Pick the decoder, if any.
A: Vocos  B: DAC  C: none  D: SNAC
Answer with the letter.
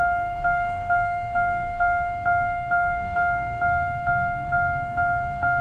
D